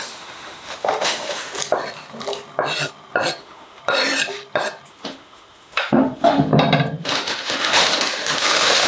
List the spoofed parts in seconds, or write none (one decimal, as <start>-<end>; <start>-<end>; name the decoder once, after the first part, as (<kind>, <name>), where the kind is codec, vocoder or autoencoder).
0.0-1.6 (autoencoder, DAC-VAE); 3.4-3.8; 4.9-6.5; 7.0-8.9